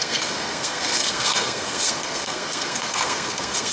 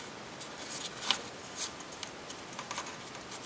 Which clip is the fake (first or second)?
first